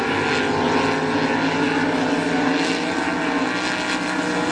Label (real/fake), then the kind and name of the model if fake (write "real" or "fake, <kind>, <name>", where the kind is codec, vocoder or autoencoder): real